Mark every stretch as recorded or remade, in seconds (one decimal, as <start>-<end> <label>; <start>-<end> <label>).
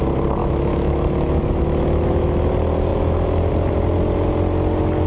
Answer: 0.0-0.4 recorded; 0.4-2.5 remade; 2.5-2.9 recorded; 2.9-3.5 remade; 3.5-5.1 recorded